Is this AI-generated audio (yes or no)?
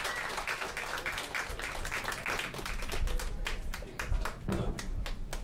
no